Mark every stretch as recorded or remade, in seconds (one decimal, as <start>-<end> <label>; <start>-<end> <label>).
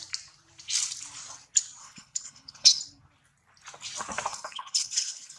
0.0-1.8 recorded; 1.8-2.8 remade; 2.8-4.3 recorded; 4.3-5.4 remade